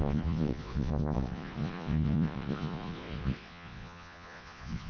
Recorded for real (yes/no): no